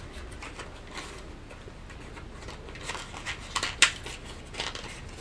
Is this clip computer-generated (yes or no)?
no